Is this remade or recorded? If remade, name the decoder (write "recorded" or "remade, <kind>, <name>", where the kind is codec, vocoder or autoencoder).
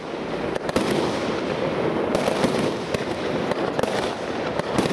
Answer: recorded